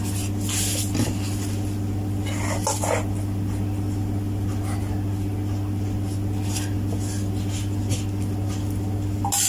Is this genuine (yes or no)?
yes